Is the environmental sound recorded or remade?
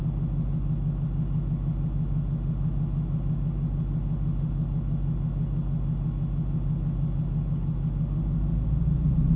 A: recorded